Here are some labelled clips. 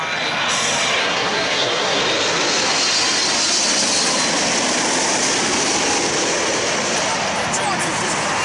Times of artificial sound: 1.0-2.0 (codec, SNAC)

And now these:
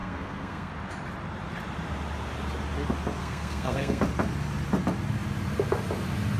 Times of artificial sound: 0.0-0.7 (codec, SNAC); 3.2-4.0

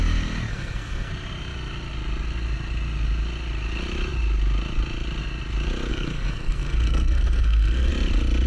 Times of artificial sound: 0.5-1.1 (codec, SNAC); 5.9-7.9